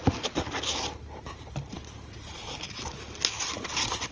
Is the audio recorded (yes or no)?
yes